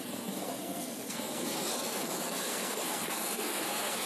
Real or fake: fake